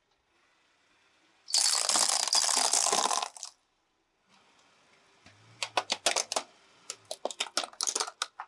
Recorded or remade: recorded